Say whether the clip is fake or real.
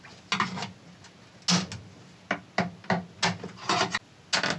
real